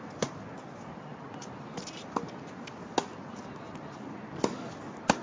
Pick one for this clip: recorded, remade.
recorded